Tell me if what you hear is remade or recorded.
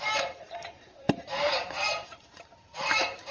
remade